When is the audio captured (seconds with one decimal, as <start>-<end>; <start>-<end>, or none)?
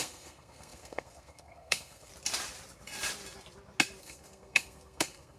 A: 2.1-4.0